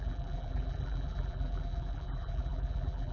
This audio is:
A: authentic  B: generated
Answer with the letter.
B